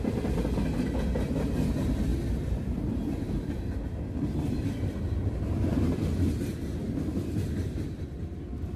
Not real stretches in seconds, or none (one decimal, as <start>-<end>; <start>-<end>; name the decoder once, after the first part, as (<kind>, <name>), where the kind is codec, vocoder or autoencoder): none

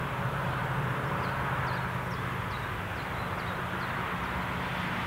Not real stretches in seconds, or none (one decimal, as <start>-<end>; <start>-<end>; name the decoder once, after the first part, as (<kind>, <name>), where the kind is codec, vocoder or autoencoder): none

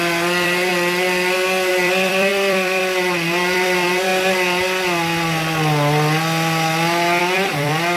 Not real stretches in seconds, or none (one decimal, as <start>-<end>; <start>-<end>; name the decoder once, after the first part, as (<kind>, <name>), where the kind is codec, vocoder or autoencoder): 0.0-0.7 (vocoder, BigVGAN v2); 1.7-4.1; 7.2-8.0

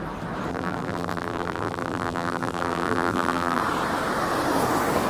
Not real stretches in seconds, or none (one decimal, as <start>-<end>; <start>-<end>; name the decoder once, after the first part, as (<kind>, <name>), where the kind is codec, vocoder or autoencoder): 0.5-3.6 (vocoder, BigVGAN v2)

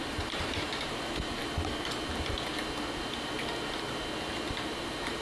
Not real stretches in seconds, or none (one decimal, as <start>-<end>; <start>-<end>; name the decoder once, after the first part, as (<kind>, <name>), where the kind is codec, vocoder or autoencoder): 0.0-1.4 (vocoder, BigVGAN v2); 4.5-5.2

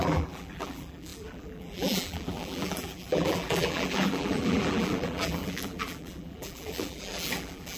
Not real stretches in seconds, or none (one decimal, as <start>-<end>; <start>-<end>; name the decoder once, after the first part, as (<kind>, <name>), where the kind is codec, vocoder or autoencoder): 0.0-7.8 (vocoder, BigVGAN v2)

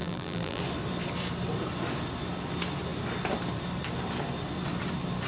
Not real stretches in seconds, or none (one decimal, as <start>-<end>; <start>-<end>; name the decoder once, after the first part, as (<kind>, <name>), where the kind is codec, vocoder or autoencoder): 0.0-0.6 (vocoder, BigVGAN v2)

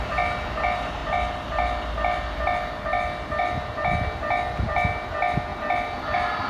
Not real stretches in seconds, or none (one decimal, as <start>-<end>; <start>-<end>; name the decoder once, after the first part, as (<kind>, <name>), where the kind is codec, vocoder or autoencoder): none